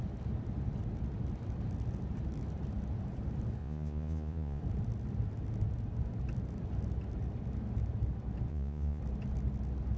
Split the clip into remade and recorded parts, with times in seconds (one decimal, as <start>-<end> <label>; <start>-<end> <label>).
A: 0.0-3.6 recorded; 3.6-4.6 remade; 4.6-8.5 recorded; 8.5-9.0 remade; 9.0-10.0 recorded